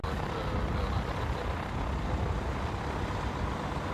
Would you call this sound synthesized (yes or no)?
no